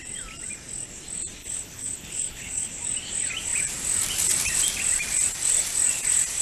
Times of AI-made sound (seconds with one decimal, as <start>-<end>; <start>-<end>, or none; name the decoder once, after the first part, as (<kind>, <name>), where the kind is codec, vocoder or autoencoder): 1.4-2.7 (codec, HILCodec)